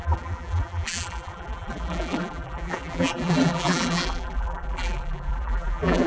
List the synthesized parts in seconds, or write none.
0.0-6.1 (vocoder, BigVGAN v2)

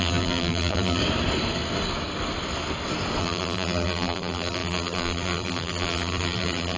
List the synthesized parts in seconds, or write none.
0.0-1.0 (vocoder, BigVGAN v2); 3.2-6.8

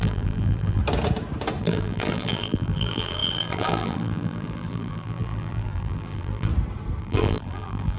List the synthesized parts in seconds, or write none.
0.0-0.8 (vocoder, BigVGAN v2); 1.6-6.5; 7.0-8.0